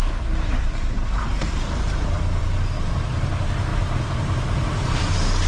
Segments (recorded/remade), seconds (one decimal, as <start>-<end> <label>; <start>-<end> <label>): 0.0-0.5 recorded; 0.5-1.9 remade; 1.9-2.4 recorded; 2.4-3.3 remade; 3.3-3.7 recorded; 3.7-5.5 remade